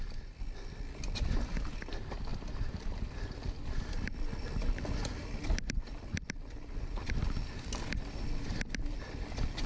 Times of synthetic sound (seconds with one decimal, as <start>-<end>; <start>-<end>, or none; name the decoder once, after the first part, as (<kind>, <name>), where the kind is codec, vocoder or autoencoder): none